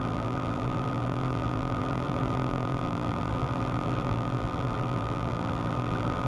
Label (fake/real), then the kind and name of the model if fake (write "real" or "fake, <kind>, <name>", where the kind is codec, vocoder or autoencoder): fake, vocoder, BigVGAN v2